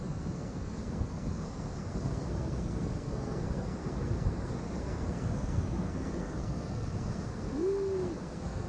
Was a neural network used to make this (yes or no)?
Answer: yes